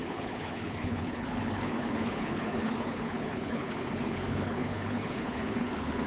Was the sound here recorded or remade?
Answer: remade